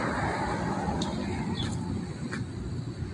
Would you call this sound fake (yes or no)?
no